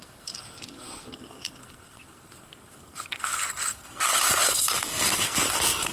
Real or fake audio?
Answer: fake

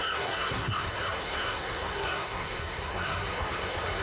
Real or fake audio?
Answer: fake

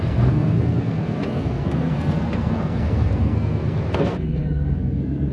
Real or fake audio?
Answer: fake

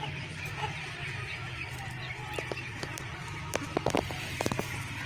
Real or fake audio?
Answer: real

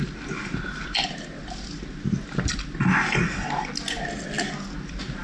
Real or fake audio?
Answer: real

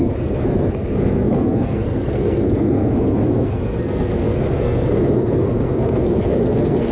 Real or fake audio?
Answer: fake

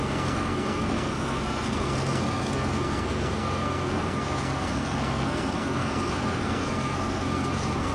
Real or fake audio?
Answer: fake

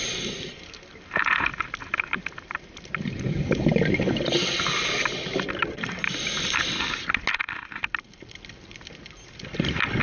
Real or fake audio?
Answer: real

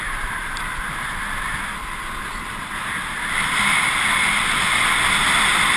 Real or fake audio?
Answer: real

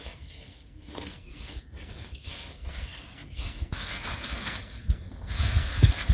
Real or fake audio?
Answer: fake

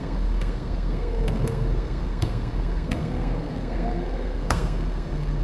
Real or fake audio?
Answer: fake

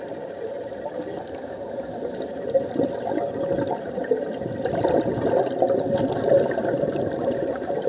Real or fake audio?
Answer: real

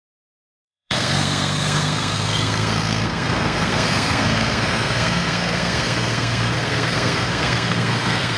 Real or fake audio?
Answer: fake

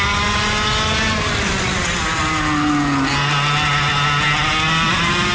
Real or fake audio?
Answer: real